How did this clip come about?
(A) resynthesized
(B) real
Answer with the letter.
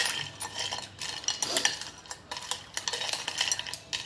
B